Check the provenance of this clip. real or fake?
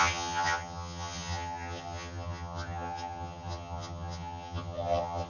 fake